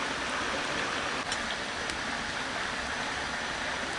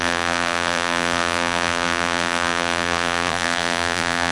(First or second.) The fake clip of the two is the second